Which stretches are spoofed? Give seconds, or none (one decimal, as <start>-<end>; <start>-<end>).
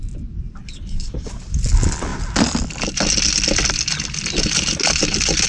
0.6-1.3